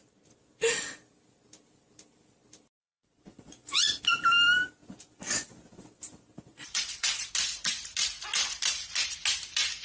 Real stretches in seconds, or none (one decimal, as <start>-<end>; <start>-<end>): 0.0-2.8; 4.0-6.5; 7.3-9.8

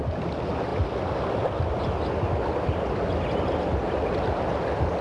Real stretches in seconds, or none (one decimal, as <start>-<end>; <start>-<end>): 0.0-5.0

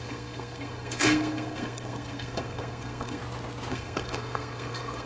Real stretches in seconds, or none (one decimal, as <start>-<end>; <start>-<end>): 3.2-3.7

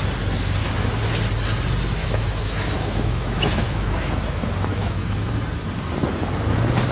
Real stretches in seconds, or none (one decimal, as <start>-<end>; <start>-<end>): 0.0-2.0; 5.3-6.9